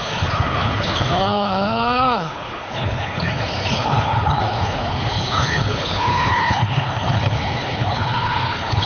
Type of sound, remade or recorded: remade